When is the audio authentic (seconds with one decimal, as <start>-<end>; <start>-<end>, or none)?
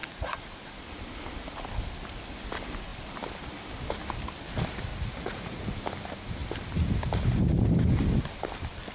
0.7-4.9; 5.6-8.9